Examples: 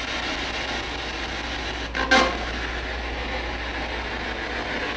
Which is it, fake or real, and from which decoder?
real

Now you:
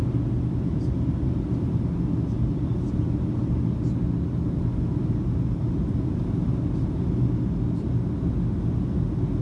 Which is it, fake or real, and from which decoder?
real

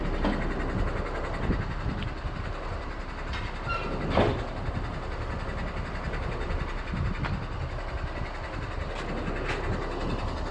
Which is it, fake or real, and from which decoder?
real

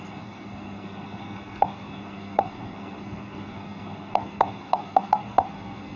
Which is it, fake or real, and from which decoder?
fake, codec, SNAC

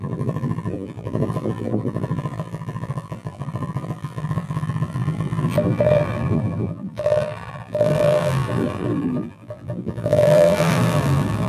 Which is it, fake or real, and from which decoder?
fake, vocoder, BigVGAN v2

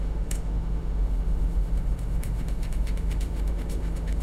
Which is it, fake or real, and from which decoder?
fake, autoencoder, DAC-VAE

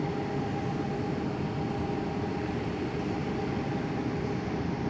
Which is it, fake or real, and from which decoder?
real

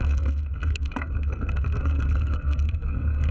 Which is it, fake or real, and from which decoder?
fake, codec, SNAC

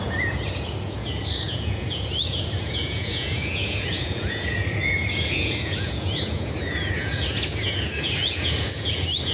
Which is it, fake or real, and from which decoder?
fake, vocoder, Vocos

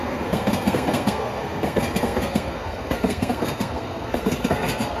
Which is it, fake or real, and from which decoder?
fake, codec, SNAC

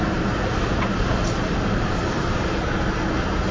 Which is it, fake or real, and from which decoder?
real